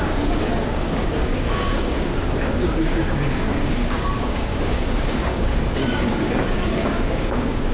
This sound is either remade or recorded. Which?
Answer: remade